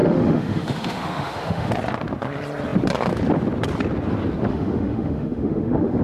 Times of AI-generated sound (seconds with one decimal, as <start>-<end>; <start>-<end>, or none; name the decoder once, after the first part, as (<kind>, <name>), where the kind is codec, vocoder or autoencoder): 0.0-1.7 (autoencoder, DAC-VAE); 4.5-6.0